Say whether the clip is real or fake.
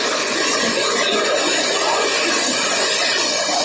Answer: fake